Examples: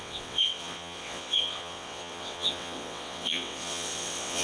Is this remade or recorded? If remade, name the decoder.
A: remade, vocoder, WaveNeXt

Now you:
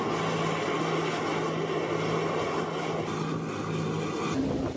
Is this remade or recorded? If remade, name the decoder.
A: recorded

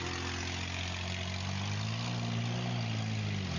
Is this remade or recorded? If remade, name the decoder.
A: recorded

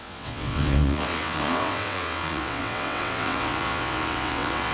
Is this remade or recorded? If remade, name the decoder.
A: remade, vocoder, WaveNeXt